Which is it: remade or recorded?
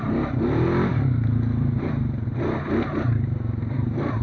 recorded